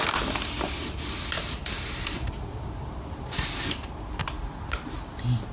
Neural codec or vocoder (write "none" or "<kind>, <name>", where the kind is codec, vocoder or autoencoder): none